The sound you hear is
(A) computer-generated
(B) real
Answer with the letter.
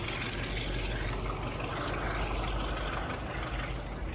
B